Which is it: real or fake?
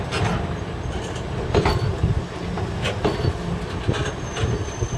real